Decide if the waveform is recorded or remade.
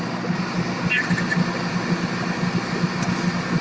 recorded